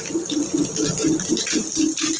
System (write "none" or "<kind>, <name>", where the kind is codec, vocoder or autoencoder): none